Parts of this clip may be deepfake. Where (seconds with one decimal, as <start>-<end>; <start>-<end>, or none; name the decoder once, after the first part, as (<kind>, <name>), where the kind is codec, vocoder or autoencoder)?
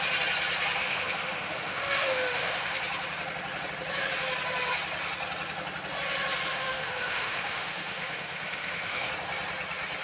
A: 0.8-2.8 (autoencoder, DAC-VAE); 6.5-9.1